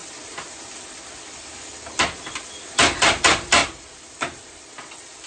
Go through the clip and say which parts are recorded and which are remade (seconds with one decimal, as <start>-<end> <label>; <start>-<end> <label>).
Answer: 0.0-5.3 recorded